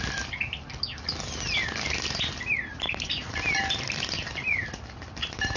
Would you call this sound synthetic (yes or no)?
no